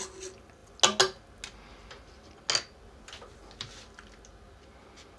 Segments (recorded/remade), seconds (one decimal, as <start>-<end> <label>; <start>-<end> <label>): 0.0-5.2 recorded